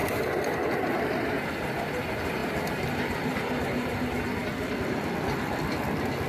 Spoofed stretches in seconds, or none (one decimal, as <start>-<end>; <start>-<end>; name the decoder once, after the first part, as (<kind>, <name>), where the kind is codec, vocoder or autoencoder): 0.5-6.3 (vocoder, BigVGAN v2)

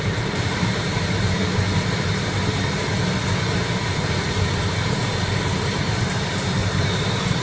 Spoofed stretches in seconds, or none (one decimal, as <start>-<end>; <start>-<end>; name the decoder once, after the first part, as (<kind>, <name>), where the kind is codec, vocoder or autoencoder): 0.0-1.4 (vocoder, BigVGAN v2); 3.9-7.4

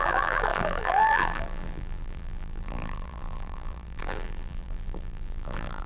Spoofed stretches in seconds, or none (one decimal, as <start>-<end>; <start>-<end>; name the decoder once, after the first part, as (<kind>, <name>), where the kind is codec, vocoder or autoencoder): 0.0-5.9 (vocoder, BigVGAN v2)

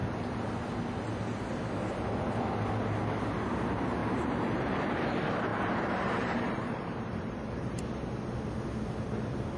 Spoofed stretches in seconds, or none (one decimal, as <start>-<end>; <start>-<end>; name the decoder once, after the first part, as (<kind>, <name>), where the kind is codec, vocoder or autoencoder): 4.0-4.7 (vocoder, BigVGAN v2); 5.5-7.8